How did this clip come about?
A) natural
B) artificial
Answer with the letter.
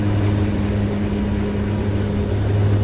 A